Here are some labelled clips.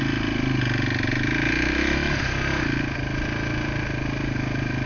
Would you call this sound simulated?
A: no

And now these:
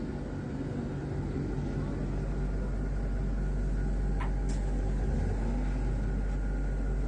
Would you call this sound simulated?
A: no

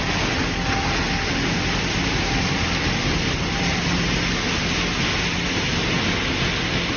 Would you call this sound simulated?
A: no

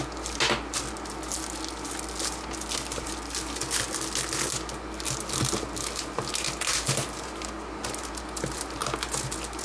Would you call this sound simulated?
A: no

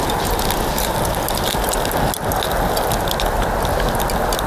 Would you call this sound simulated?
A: no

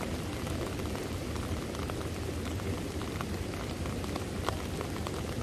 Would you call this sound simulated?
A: no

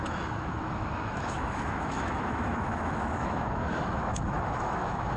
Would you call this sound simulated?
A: yes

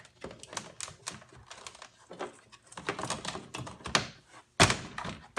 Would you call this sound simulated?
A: no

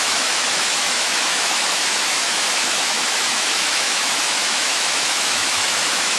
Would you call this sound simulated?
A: yes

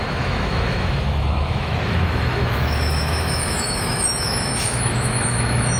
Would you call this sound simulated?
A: yes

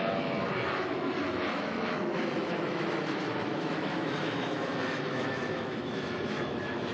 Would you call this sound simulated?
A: yes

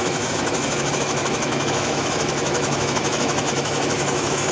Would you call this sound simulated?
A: yes